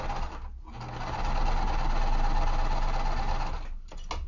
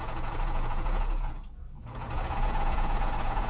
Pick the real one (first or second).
first